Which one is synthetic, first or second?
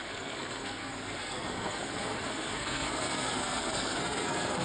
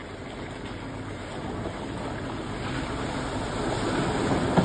first